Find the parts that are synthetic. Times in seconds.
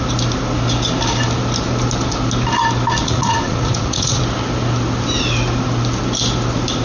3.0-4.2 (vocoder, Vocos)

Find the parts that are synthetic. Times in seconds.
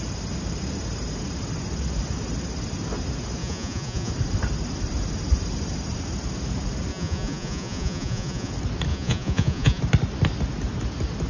3.4-4.1 (vocoder, Vocos); 6.9-8.5; 8.9-9.8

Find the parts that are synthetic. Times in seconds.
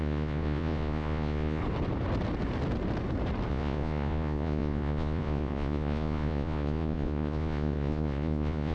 0.0-1.6 (vocoder, Vocos); 3.5-8.7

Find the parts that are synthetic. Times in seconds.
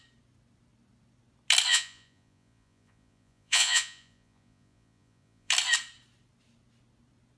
1.7-5.5 (vocoder, Vocos)